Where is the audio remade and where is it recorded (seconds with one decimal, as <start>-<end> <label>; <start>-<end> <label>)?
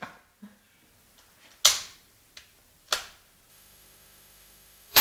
0.0-3.5 recorded; 3.5-5.0 remade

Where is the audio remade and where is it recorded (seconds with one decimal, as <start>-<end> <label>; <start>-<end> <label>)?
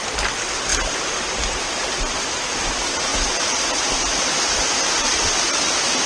0.0-6.1 recorded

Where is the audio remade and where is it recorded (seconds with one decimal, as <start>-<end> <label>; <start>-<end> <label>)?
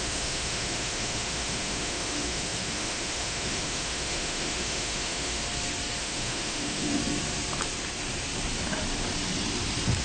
0.0-5.4 remade; 5.4-6.0 recorded; 6.0-7.0 remade; 7.0-10.0 recorded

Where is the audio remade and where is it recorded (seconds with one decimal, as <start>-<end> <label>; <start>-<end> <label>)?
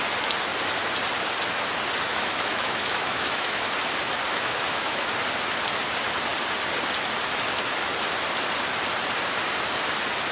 0.0-2.1 recorded; 2.1-3.7 remade; 3.7-4.3 recorded; 4.3-5.1 remade; 5.1-10.3 recorded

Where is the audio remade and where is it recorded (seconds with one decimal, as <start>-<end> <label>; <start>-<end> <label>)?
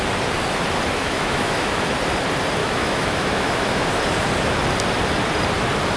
0.0-1.0 recorded; 1.0-1.8 remade; 1.8-2.6 recorded; 2.6-3.9 remade; 3.9-6.0 recorded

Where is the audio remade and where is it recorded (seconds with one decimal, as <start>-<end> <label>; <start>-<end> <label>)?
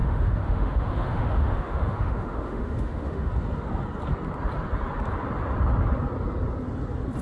0.0-3.3 remade; 3.3-7.2 recorded